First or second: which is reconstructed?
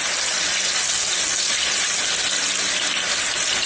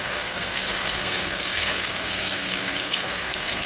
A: second